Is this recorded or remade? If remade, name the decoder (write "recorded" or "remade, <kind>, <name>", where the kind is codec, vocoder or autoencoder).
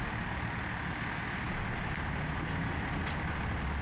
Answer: recorded